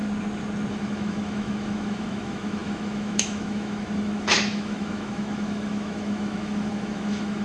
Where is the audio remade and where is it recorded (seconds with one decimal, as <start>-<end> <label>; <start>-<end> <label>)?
0.0-0.7 recorded; 0.7-7.4 remade